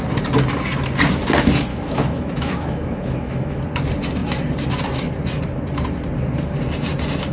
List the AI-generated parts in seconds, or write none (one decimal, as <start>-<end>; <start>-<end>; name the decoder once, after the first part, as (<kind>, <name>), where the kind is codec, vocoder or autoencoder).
1.7-3.6 (autoencoder, DAC-VAE)